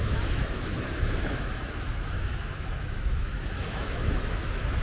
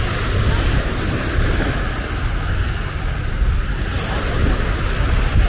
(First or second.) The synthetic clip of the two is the first